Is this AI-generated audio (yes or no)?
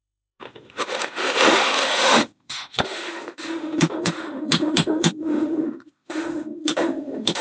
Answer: yes